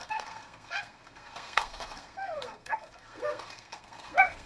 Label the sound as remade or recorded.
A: remade